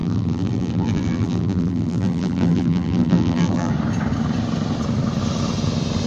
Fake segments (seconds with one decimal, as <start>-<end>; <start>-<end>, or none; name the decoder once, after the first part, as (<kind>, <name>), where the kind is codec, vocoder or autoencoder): 0.0-3.7 (vocoder, BigVGAN v2)